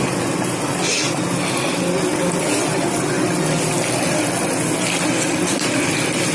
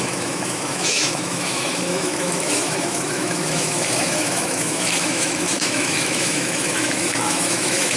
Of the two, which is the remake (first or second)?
second